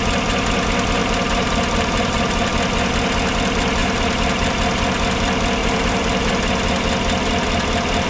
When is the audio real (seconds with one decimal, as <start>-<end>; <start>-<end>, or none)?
0.0-1.0; 2.5-3.8; 4.5-5.6; 6.3-8.1